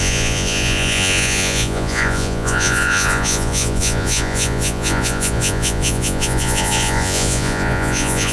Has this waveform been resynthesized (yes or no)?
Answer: yes